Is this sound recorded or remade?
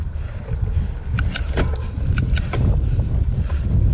recorded